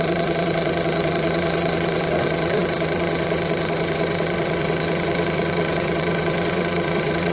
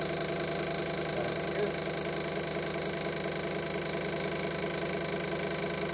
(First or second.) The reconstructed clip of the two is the first